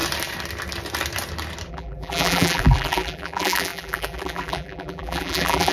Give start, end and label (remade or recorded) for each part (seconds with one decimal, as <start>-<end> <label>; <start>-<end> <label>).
0.0-1.7 recorded; 1.7-5.7 remade